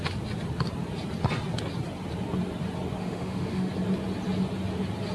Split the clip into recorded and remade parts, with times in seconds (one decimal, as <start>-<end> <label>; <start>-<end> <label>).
0.0-3.0 recorded; 3.0-3.7 remade; 3.7-5.1 recorded